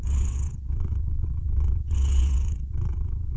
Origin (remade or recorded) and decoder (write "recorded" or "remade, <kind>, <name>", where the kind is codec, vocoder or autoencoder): remade, vocoder, WaveNeXt